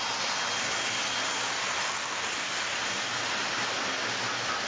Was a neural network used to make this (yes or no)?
no